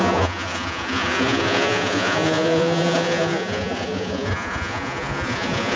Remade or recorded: remade